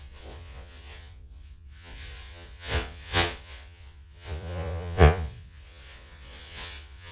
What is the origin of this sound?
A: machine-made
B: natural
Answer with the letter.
A